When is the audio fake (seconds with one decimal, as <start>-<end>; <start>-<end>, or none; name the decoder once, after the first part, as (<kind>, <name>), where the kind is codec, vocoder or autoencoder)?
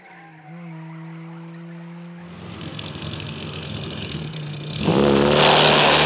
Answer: 2.6-4.9 (codec, SNAC)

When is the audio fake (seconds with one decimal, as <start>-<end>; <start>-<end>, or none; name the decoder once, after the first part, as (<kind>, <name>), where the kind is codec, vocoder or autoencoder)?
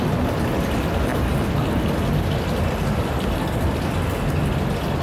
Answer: none